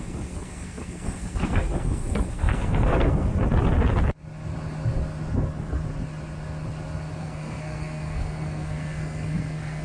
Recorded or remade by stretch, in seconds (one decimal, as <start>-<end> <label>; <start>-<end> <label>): 0.0-3.3 remade; 3.3-7.2 recorded; 7.2-9.8 remade